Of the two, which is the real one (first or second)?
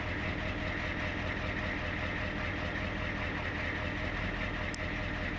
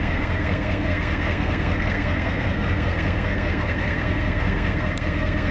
first